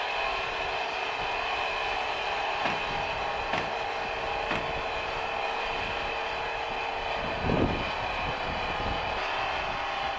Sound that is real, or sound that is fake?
real